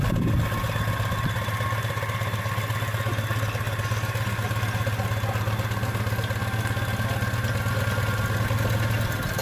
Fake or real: real